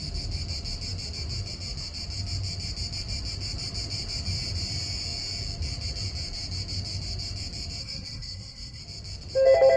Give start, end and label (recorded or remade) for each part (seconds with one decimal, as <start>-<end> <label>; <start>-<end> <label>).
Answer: 0.0-7.8 recorded; 7.8-8.8 remade; 8.8-9.8 recorded